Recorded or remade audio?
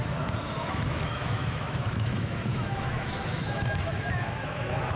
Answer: remade